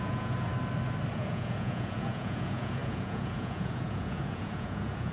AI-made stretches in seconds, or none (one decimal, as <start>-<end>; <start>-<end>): 0.0-0.5; 1.1-5.1